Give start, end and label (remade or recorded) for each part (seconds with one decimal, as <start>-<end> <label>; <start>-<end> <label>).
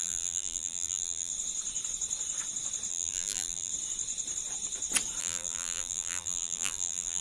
0.0-1.3 remade; 1.3-2.9 recorded; 2.9-3.7 remade; 3.7-5.2 recorded; 5.2-7.2 remade